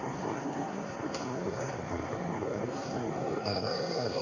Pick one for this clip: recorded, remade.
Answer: remade